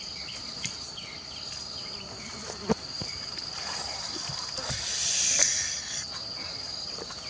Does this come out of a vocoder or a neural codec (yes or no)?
no